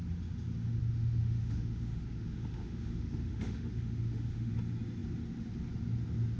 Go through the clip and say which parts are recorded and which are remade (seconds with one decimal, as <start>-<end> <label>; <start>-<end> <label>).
0.0-0.8 recorded; 0.8-4.5 remade; 4.5-6.4 recorded